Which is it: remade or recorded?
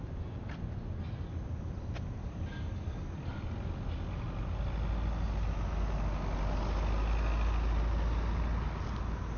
recorded